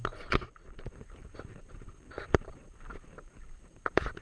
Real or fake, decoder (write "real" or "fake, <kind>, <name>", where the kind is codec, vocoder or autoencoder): fake, vocoder, BigVGAN v2